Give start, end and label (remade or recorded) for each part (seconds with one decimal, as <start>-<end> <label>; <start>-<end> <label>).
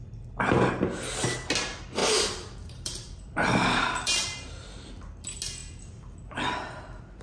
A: 0.0-2.0 recorded; 2.0-4.5 remade; 4.5-7.2 recorded